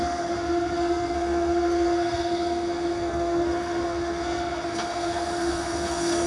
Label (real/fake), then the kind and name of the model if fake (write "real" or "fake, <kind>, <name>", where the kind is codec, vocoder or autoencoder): fake, codec, SNAC